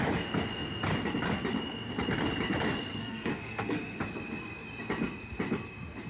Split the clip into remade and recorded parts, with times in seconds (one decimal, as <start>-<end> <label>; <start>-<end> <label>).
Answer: 0.0-3.0 recorded; 3.0-4.0 remade; 4.0-6.1 recorded